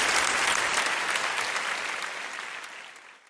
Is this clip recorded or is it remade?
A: recorded